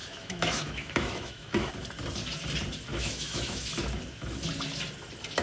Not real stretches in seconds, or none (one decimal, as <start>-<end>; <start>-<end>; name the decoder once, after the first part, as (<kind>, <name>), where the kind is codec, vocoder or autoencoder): 0.0-1.7 (autoencoder, DAC-VAE); 2.9-3.7